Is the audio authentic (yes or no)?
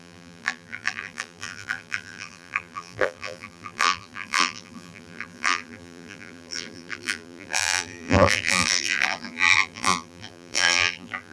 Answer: no